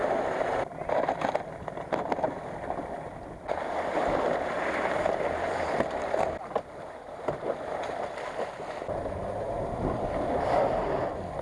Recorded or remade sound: recorded